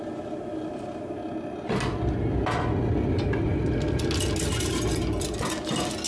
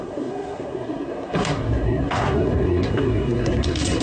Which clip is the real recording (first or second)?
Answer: first